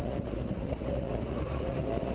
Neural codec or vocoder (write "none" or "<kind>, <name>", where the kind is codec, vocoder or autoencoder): vocoder, Vocos